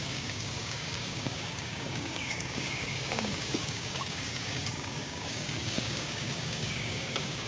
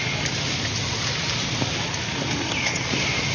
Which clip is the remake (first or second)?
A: first